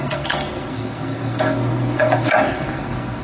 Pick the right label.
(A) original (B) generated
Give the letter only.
B